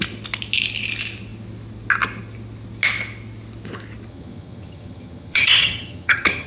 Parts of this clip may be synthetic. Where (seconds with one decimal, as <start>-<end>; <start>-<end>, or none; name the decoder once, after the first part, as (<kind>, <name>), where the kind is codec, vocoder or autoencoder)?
4.1-6.5 (vocoder, HiFi-GAN)

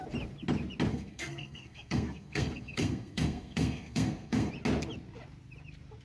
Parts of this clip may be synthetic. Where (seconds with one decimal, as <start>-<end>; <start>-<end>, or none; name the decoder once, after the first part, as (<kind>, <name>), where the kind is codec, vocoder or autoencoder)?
0.9-4.5 (codec, SNAC)

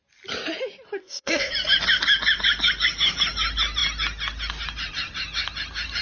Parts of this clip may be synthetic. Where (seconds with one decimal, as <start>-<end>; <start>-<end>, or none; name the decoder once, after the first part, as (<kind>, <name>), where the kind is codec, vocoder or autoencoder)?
1.0-1.5 (codec, ZipCodec)